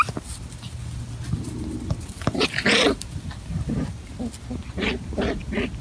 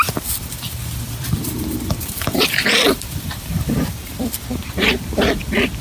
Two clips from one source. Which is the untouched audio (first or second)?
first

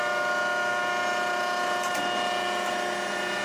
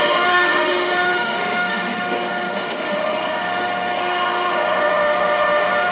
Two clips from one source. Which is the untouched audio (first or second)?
first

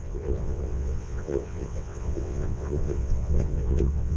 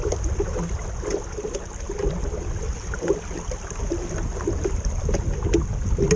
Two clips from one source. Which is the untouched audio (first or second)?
second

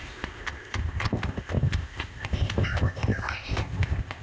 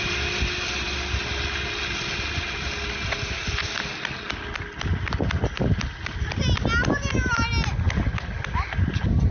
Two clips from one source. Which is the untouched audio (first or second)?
second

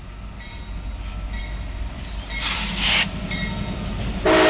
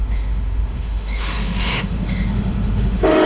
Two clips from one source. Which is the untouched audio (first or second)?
first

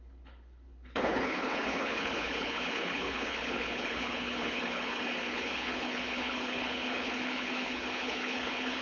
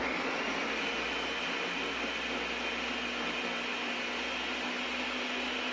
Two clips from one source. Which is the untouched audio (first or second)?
second